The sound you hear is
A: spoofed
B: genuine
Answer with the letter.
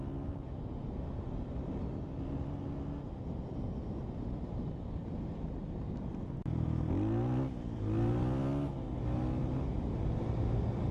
B